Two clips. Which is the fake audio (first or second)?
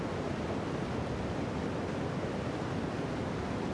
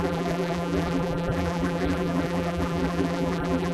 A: second